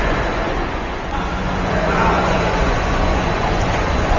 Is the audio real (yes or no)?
no